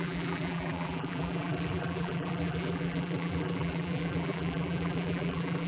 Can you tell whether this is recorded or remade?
remade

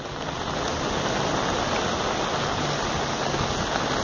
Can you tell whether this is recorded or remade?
recorded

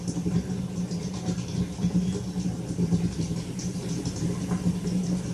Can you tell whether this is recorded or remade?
recorded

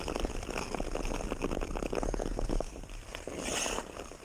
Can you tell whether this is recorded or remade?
recorded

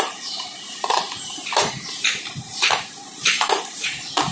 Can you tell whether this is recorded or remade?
remade